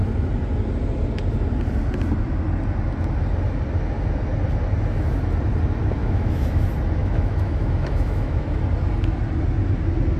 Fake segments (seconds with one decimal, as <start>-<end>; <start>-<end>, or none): 6.0-6.6; 7.0-8.6